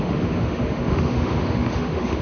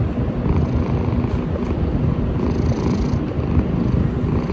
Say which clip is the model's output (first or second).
first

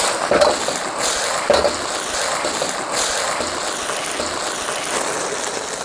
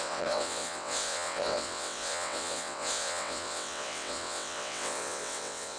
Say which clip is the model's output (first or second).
second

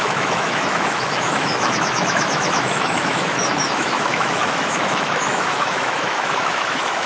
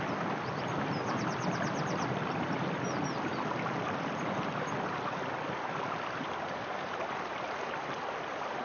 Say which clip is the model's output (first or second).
first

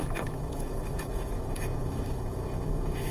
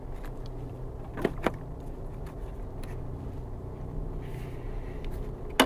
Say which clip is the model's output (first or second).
first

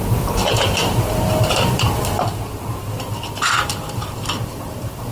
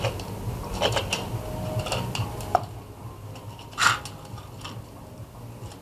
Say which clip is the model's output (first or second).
first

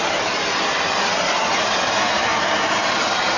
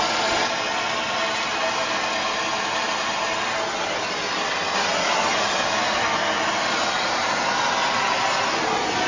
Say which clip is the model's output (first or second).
first